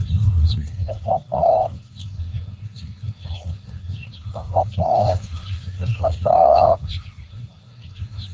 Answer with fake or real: fake